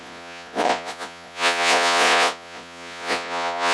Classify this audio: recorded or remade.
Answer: remade